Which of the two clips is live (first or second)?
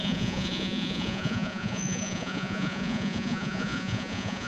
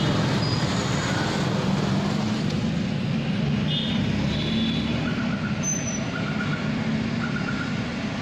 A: second